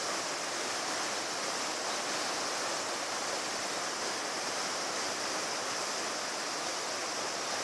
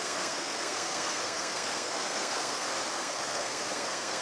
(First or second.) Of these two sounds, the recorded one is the first